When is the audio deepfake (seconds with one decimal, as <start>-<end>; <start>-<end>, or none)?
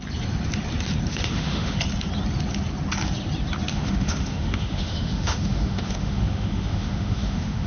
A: 1.1-1.8; 3.7-7.7